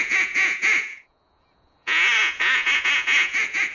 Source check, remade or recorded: remade